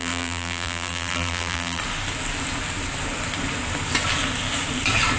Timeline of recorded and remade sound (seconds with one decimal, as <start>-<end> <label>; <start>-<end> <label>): 0.0-1.8 remade; 1.8-5.2 recorded